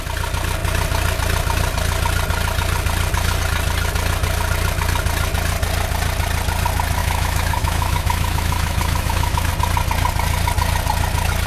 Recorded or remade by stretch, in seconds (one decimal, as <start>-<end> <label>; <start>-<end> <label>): 0.0-7.0 recorded; 7.0-9.5 remade; 9.5-11.5 recorded